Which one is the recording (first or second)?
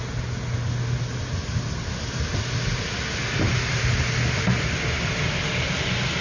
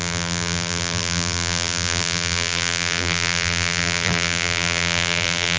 first